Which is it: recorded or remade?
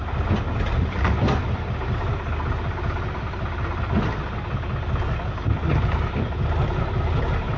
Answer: recorded